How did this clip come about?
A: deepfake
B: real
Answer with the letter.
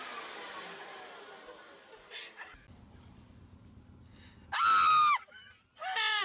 B